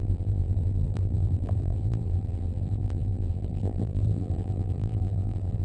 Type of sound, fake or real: fake